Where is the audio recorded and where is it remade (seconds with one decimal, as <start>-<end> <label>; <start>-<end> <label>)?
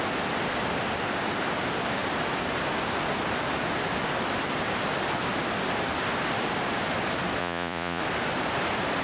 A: 0.0-7.4 recorded; 7.4-8.0 remade; 8.0-9.0 recorded